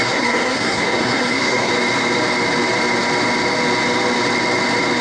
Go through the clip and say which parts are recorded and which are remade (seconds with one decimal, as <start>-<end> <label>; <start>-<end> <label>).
0.0-1.7 remade; 1.7-5.0 recorded